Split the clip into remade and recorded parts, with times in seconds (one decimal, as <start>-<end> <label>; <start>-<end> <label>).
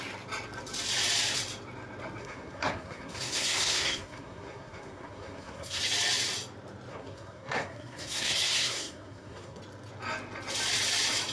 0.0-2.2 recorded; 2.2-5.8 remade; 5.8-6.9 recorded; 6.9-9.6 remade; 9.6-11.3 recorded